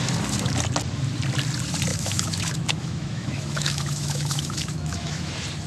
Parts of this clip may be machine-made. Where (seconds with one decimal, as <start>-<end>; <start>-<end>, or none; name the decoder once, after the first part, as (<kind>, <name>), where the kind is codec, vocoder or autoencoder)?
1.9-5.3 (autoencoder, DAC-VAE)